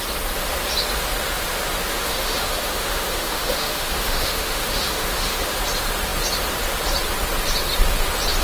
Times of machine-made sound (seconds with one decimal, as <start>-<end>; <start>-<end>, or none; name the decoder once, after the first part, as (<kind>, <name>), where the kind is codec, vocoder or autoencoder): 1.9-5.6 (autoencoder, DAC-VAE)